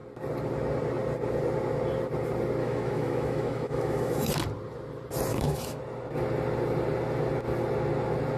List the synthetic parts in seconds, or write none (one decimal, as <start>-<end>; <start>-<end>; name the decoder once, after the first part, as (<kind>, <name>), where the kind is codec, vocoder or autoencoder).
2.6-4.3 (autoencoder, DAC-VAE); 5.3-5.8